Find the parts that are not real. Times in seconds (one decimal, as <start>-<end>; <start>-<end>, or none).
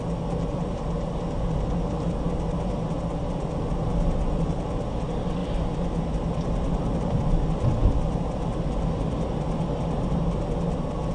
none